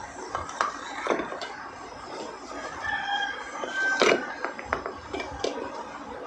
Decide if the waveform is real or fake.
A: real